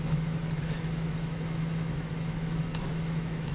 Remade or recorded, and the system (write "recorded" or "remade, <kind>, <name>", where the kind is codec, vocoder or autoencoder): remade, autoencoder, DAC-VAE